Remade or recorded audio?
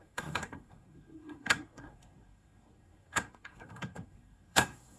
remade